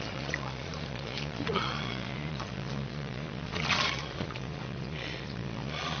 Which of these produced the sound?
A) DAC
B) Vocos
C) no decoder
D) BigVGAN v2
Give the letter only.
B